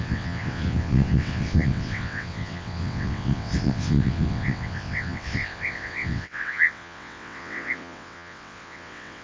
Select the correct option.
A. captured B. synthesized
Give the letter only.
B